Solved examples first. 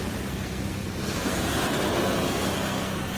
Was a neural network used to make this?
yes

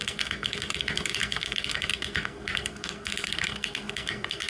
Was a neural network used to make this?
yes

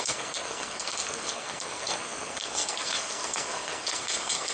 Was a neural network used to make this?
yes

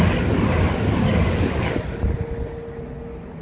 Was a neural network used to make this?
no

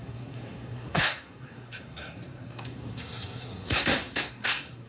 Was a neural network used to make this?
yes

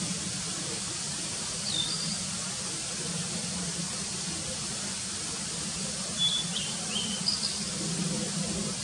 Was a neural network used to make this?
no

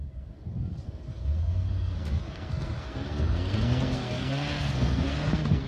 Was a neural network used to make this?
yes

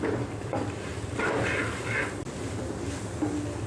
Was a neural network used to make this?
no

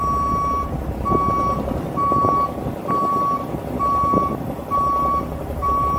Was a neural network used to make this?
no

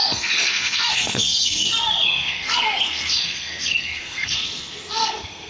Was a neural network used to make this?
yes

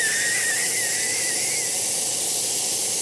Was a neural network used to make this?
no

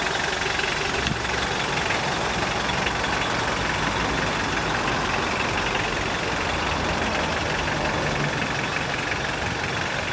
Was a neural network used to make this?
no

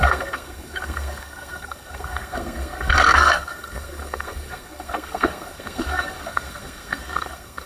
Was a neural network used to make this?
yes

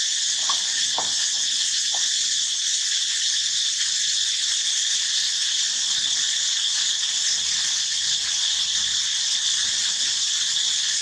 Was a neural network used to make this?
no